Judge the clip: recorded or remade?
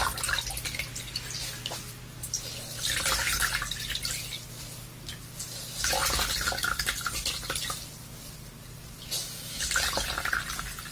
recorded